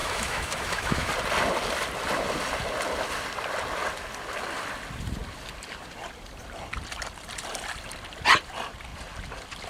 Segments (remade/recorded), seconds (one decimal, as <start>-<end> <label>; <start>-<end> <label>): 0.0-1.1 remade; 1.1-9.7 recorded